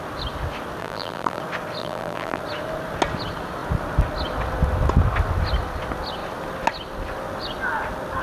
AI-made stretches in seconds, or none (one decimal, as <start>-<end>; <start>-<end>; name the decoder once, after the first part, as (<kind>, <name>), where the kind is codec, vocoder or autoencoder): 0.8-1.4 (vocoder, BigVGAN v2); 1.8-2.4